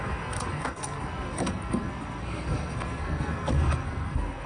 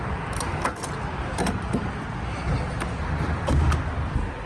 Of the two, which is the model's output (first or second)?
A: first